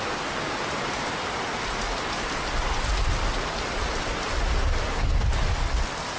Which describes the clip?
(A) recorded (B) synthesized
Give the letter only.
A